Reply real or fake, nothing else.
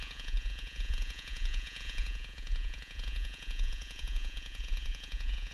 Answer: fake